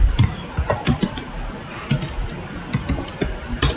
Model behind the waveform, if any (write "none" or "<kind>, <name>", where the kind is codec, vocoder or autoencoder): none